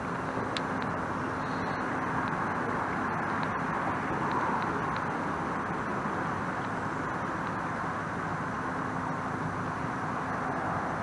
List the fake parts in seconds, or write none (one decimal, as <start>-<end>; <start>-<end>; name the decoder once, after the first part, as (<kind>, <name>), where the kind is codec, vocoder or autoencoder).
none